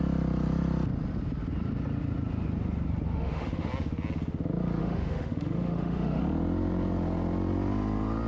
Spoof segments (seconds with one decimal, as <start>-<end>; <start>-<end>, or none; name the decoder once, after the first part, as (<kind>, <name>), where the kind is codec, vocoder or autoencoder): 3.1-3.7 (autoencoder, DAC-VAE); 4.8-6.2